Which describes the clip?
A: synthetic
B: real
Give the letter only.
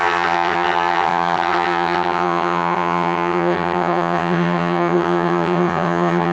A